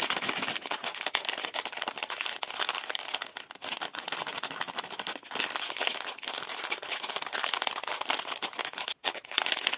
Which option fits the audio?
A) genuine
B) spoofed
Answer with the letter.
A